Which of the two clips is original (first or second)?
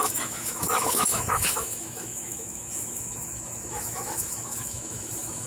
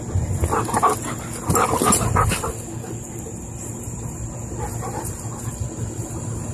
second